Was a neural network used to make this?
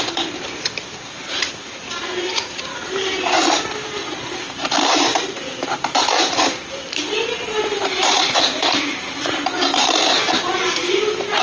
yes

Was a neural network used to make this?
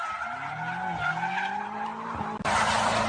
no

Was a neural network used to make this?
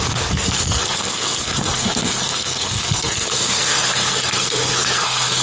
yes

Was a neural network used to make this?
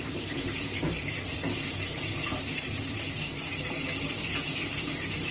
yes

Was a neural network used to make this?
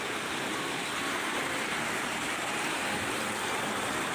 yes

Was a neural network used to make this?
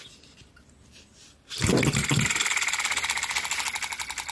no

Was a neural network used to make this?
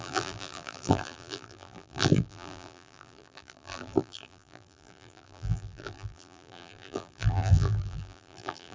yes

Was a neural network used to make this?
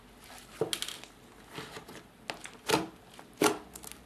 no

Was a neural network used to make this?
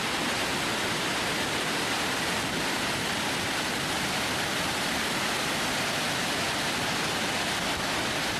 no